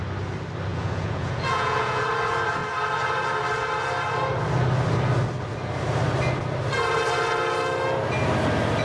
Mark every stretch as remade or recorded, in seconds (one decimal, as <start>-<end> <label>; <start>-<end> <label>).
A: 0.0-0.7 recorded; 0.7-2.0 remade; 2.0-8.8 recorded